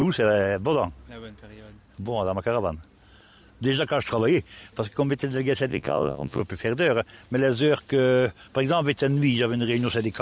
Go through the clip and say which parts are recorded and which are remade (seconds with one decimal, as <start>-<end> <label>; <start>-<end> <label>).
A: 0.0-5.7 recorded; 5.7-6.4 remade; 6.4-10.2 recorded

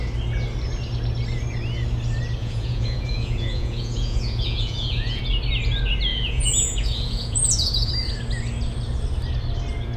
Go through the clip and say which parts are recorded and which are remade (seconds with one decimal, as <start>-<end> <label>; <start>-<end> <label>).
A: 0.0-2.4 recorded; 2.4-5.2 remade; 5.2-6.1 recorded; 6.1-7.9 remade; 7.9-10.0 recorded

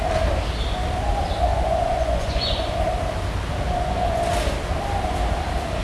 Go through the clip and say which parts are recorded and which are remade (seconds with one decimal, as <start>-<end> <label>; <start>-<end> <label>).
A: 0.0-1.5 recorded; 1.5-2.8 remade; 2.8-3.7 recorded; 3.7-4.3 remade; 4.3-5.8 recorded

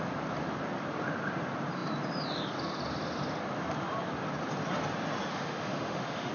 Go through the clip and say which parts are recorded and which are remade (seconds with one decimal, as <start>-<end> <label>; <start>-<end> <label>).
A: 0.0-5.3 recorded; 5.3-6.3 remade

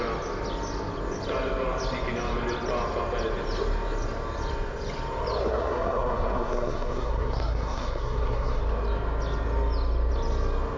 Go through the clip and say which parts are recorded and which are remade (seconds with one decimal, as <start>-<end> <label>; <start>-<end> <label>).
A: 0.0-5.4 recorded; 5.4-8.6 remade; 8.6-10.8 recorded